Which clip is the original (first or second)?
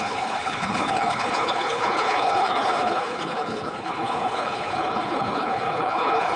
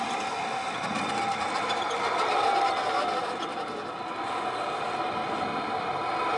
second